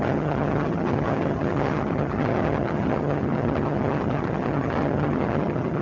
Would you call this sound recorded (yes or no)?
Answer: no